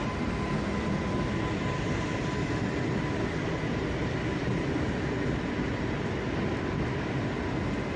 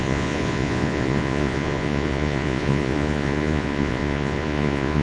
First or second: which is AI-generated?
second